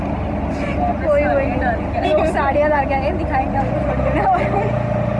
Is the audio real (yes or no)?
yes